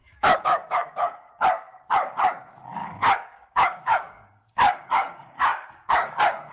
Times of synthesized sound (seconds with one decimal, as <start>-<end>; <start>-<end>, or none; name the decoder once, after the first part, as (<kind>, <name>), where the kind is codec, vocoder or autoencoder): 0.0-1.3 (codec, DAC); 2.8-6.5